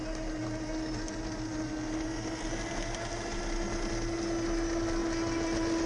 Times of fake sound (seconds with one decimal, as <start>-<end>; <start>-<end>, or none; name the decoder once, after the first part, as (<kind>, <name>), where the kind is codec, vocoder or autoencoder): none